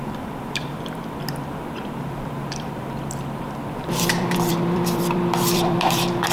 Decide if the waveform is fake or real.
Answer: fake